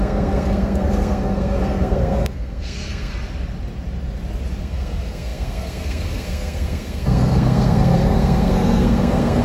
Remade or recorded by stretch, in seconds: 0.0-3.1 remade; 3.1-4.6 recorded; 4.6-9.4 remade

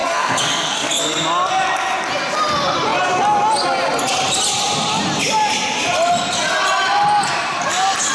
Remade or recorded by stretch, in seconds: 0.0-1.0 remade; 1.0-8.1 recorded

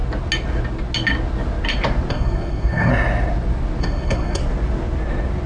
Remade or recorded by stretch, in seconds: 0.0-2.1 recorded; 2.1-2.9 remade; 2.9-3.8 recorded; 3.8-4.4 remade; 4.4-5.5 recorded